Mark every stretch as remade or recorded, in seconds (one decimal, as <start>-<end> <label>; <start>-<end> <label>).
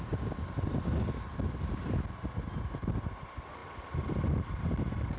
0.0-5.2 recorded